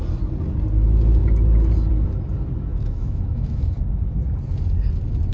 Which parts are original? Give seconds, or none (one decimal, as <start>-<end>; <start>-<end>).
0.0-2.7; 3.8-5.3